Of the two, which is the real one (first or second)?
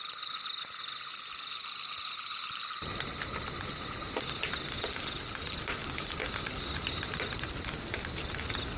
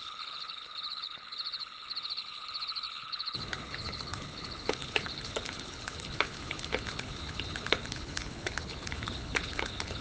first